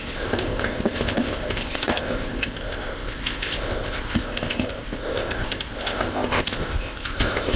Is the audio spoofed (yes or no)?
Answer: yes